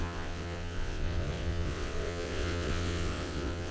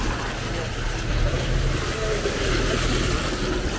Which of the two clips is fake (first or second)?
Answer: first